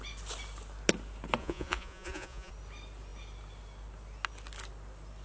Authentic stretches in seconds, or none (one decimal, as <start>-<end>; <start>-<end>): 0.0-1.4; 2.5-5.2